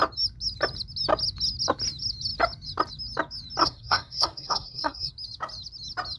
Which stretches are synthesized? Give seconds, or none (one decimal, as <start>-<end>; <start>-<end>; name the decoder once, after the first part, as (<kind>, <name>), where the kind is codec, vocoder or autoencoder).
3.6-5.1 (codec, SNAC)

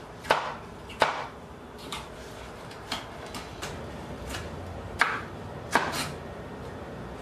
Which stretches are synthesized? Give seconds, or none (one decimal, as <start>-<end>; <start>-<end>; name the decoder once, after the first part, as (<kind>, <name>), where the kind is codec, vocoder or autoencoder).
1.1-3.1 (vocoder, BigVGAN v2); 3.5-6.5

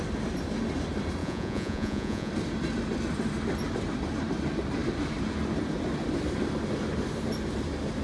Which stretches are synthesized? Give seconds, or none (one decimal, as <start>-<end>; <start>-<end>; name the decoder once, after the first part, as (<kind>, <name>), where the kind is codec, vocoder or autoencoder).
1.2-2.3 (vocoder, Vocos)

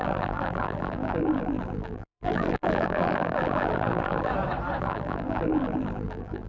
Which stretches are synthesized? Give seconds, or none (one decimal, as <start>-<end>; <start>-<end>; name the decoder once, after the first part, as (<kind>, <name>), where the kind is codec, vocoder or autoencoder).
0.0-4.3 (vocoder, BigVGAN v2); 4.8-6.5

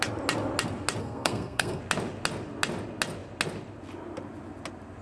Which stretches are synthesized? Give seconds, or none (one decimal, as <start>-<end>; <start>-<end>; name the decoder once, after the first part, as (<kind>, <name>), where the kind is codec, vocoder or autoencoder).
1.0-1.8 (codec, SNAC)